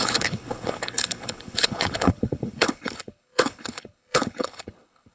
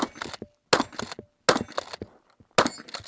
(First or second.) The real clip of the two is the second